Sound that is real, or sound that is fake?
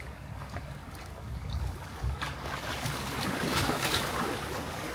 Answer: fake